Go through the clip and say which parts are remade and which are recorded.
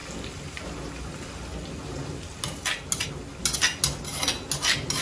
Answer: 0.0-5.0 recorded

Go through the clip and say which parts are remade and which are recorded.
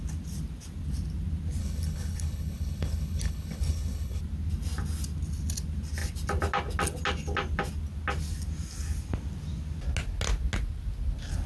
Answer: 0.0-1.6 recorded; 1.6-4.2 remade; 4.2-11.5 recorded